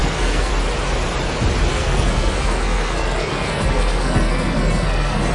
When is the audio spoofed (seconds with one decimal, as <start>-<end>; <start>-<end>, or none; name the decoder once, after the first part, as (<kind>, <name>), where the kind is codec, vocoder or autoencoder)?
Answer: 0.0-0.5 (codec, SNAC); 1.7-5.3